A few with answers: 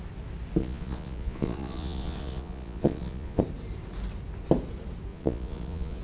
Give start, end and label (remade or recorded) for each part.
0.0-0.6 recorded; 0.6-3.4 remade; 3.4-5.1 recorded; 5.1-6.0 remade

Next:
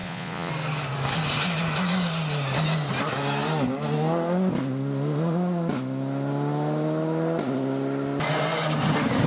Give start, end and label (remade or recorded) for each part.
0.0-0.5 remade; 0.5-9.3 recorded

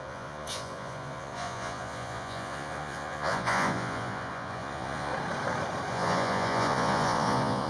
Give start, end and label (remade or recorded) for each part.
0.0-5.1 remade; 5.1-5.9 recorded; 5.9-7.7 remade

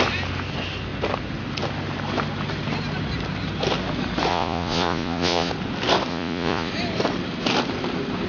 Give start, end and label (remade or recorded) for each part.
0.0-4.3 recorded; 4.3-5.5 remade; 5.5-6.1 recorded; 6.1-6.7 remade; 6.7-8.3 recorded

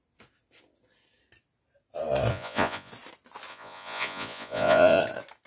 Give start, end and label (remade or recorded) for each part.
0.0-2.3 recorded; 2.3-2.9 remade; 2.9-3.5 recorded; 3.5-5.0 remade; 5.0-5.5 recorded

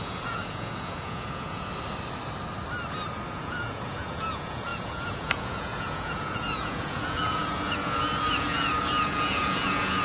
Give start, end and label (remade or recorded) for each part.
0.0-1.7 remade; 1.7-3.3 recorded; 3.3-10.0 remade

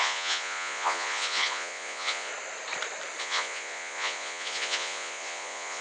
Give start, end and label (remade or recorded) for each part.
0.0-2.3 remade; 2.3-3.2 recorded; 3.2-5.8 remade

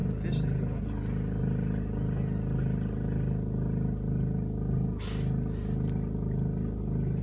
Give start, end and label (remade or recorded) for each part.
0.0-7.2 recorded